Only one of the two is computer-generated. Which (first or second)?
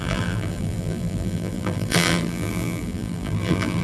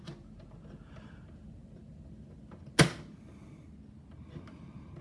first